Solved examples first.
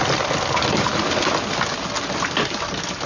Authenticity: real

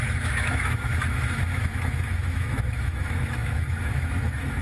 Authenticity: fake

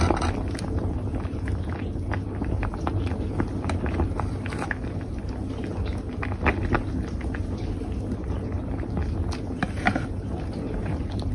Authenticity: real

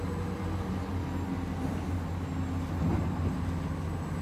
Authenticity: real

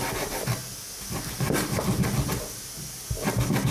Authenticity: real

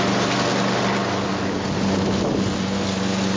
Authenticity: real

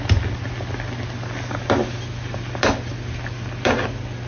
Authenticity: real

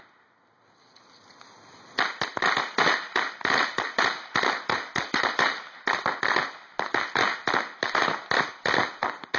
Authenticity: real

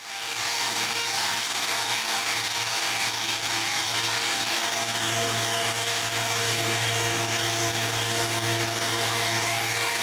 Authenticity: fake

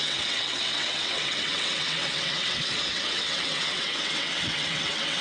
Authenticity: fake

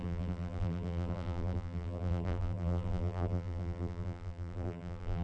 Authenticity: fake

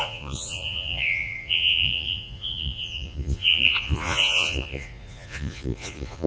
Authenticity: fake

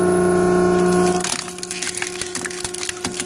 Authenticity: real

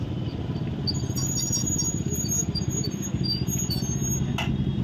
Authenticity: real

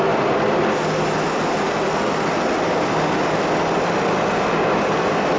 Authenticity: real